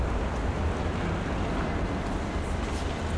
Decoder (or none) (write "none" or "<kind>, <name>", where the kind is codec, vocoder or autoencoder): none